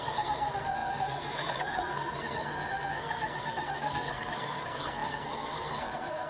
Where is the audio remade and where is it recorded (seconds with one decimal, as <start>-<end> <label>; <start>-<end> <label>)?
0.0-6.3 remade

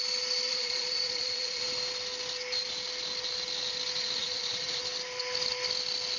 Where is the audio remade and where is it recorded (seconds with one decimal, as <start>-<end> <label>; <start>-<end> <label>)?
0.0-0.5 recorded; 0.5-1.6 remade; 1.6-4.2 recorded; 4.2-4.8 remade; 4.8-6.2 recorded